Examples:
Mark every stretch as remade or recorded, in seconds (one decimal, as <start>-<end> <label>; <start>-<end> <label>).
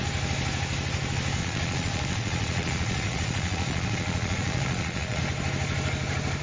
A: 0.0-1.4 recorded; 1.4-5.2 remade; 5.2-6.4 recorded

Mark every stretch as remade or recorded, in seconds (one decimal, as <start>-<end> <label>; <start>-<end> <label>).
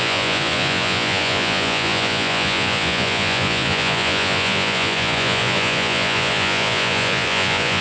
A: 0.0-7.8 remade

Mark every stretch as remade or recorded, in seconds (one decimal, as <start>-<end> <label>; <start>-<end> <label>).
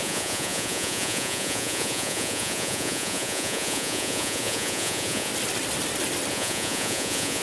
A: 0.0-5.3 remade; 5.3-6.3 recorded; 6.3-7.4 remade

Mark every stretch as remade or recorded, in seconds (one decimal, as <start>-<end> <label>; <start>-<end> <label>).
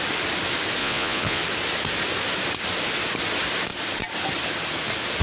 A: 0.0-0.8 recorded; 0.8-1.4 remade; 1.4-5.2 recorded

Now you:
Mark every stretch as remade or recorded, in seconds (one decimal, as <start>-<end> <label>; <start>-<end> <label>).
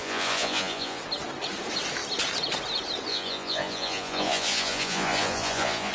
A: 0.0-1.0 remade; 1.0-3.1 recorded; 3.1-5.9 remade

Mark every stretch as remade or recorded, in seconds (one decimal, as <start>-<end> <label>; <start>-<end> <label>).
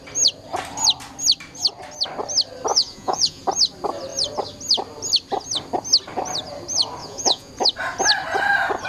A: 0.0-2.7 recorded; 2.7-3.4 remade; 3.4-7.0 recorded; 7.0-7.5 remade; 7.5-8.9 recorded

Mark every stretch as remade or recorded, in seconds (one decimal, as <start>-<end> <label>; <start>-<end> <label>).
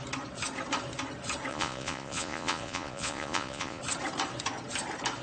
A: 0.0-1.5 recorded; 1.5-3.8 remade; 3.8-5.2 recorded